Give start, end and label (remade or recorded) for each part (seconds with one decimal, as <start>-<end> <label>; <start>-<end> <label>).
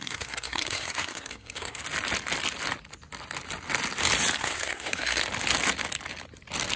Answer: 0.0-1.8 remade; 1.8-4.4 recorded; 4.4-5.2 remade; 5.2-6.8 recorded